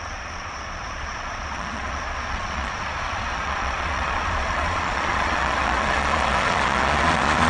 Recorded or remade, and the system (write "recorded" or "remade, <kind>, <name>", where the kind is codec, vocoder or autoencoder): remade, vocoder, Vocos